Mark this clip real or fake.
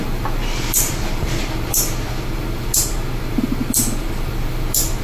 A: fake